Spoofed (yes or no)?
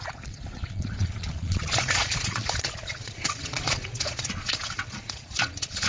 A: yes